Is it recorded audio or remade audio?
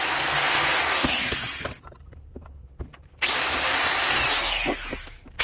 recorded